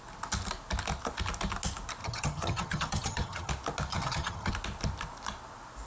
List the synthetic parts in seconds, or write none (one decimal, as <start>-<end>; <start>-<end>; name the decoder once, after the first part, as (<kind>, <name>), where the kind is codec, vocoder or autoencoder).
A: 2.0-3.5 (vocoder, HiFi-GAN); 3.9-4.5